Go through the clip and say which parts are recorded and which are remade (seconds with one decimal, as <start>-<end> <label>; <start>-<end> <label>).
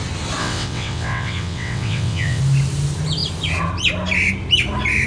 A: 0.0-0.4 recorded; 0.4-2.4 remade; 2.4-5.1 recorded